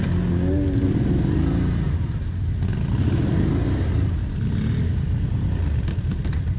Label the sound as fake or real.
real